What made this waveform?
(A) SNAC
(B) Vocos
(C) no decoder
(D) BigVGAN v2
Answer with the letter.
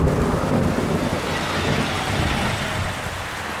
C